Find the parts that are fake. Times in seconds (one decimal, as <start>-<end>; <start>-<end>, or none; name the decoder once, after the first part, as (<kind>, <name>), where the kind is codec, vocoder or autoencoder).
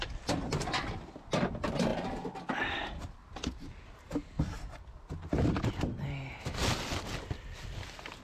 none